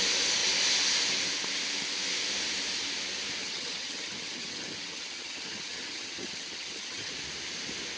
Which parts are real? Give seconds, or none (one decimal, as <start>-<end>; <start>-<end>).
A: 0.0-3.4; 7.1-8.0